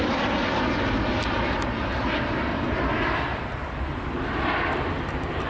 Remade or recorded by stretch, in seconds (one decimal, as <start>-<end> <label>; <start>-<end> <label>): 0.0-2.5 recorded; 2.5-3.4 remade; 3.4-5.5 recorded